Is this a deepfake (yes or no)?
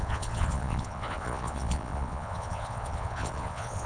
yes